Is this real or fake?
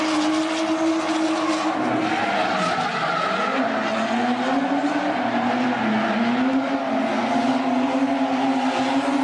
real